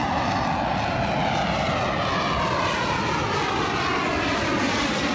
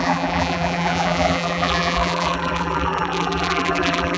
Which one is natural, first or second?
first